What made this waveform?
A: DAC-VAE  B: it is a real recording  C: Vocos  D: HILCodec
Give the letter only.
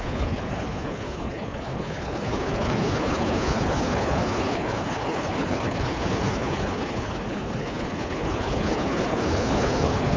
D